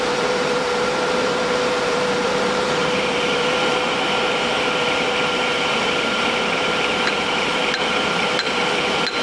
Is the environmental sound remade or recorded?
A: remade